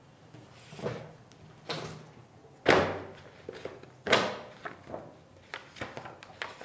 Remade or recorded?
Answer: recorded